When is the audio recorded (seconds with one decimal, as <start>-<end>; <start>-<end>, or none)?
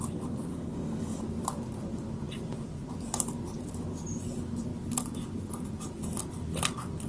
0.0-0.5; 1.2-7.1